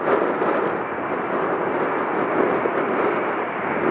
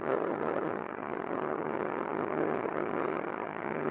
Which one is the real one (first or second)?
first